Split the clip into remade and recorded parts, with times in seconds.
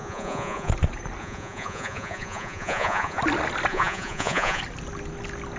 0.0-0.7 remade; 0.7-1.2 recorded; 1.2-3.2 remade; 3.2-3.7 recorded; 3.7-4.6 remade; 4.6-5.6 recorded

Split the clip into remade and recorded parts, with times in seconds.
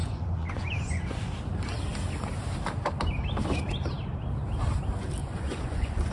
0.0-1.3 remade; 1.3-5.2 recorded; 5.2-6.1 remade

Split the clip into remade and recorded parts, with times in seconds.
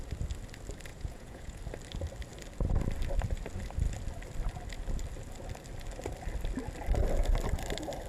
0.0-0.9 recorded; 0.9-1.6 remade; 1.6-8.1 recorded